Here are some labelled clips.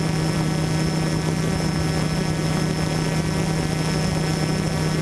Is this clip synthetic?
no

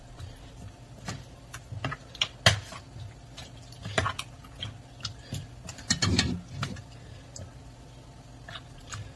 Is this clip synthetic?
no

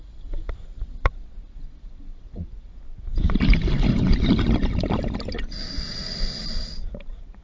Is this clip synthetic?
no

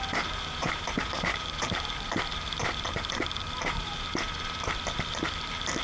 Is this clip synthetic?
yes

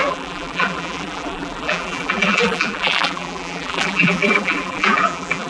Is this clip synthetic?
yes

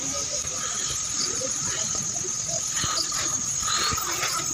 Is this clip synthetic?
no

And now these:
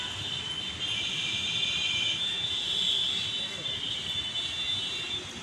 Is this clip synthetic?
yes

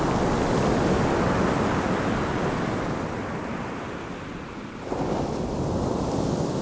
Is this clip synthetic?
no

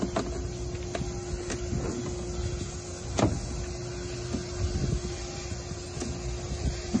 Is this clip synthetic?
no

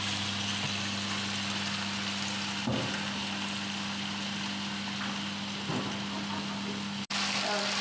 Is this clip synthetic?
no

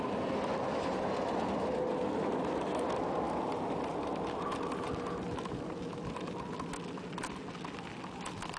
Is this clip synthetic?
no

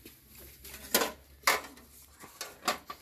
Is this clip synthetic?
no